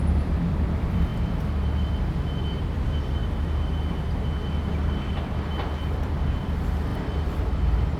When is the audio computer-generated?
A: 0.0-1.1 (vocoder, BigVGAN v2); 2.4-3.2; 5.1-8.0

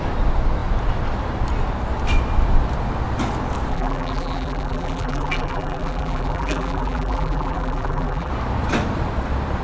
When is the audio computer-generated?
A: 3.7-8.3 (vocoder, BigVGAN v2)